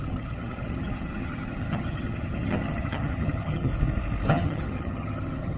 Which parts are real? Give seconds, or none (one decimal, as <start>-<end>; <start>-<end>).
3.7-4.3